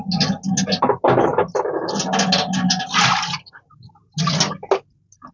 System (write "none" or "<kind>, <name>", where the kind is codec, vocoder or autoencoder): none